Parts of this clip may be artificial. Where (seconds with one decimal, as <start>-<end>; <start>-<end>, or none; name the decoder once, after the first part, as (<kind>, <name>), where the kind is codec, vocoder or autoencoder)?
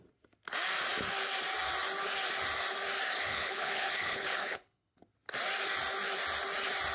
3.3-5.0 (codec, HILCodec)